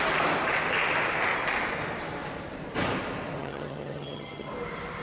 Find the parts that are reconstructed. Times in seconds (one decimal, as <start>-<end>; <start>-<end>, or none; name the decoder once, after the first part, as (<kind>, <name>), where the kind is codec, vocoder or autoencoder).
3.4-4.5 (vocoder, HiFi-GAN)